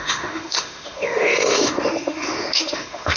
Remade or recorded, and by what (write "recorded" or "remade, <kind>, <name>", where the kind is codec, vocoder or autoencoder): remade, autoencoder, DAC-VAE